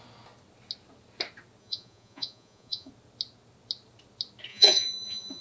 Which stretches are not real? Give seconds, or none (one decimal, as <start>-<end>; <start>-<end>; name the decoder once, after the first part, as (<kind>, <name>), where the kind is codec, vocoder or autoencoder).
1.6-2.9 (vocoder, Vocos); 4.5-5.4